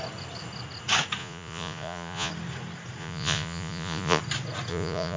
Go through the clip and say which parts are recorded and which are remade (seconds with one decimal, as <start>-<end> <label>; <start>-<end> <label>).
0.0-1.2 recorded; 1.2-2.3 remade; 2.3-3.0 recorded; 3.0-4.2 remade; 4.2-4.7 recorded; 4.7-5.2 remade